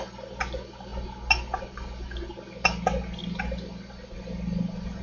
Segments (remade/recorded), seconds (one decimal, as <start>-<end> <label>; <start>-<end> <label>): 0.0-5.0 recorded